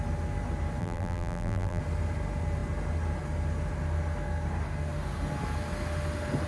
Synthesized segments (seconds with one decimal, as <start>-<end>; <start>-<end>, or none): 0.8-1.8